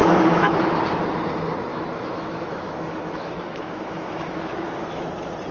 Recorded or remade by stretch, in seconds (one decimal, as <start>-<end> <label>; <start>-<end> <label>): 0.0-0.7 remade; 0.7-1.7 recorded; 1.7-5.0 remade; 5.0-5.5 recorded

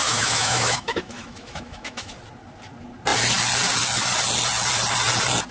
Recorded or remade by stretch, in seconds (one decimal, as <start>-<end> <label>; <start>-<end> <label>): 0.0-2.1 remade; 2.1-5.5 recorded

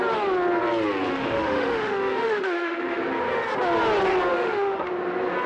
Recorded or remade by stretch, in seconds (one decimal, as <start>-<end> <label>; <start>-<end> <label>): 0.0-1.1 recorded; 1.1-3.0 remade; 3.0-4.3 recorded; 4.3-4.9 remade; 4.9-5.5 recorded

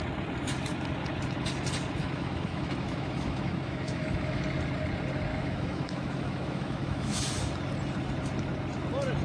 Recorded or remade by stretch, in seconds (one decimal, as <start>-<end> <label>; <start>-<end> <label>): 0.0-2.0 recorded; 2.0-4.4 remade; 4.4-5.3 recorded; 5.3-7.3 remade; 7.3-9.2 recorded

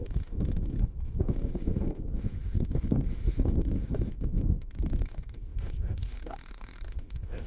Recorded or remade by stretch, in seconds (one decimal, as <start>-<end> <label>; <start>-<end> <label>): 0.0-7.5 remade

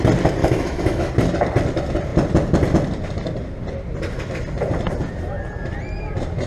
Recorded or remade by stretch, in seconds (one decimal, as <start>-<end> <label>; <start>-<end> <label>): 0.0-0.4 recorded; 0.4-1.1 remade; 1.1-6.5 recorded

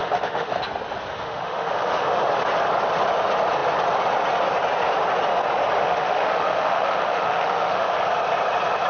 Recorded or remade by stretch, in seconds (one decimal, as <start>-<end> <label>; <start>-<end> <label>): 0.0-0.6 remade; 0.6-1.1 recorded; 1.1-2.2 remade; 2.2-5.8 recorded; 5.8-7.9 remade; 7.9-8.9 recorded

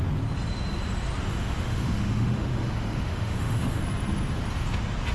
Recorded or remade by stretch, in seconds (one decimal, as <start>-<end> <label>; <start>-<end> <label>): 0.0-1.3 recorded; 1.3-3.8 remade; 3.8-5.1 recorded